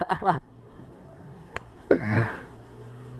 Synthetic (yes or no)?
yes